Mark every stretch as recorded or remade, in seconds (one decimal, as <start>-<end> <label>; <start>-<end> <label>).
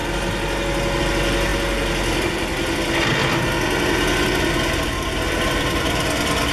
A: 0.0-6.5 recorded